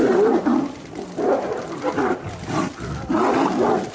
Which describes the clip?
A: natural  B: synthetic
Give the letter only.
A